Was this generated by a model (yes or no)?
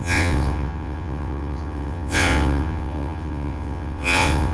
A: yes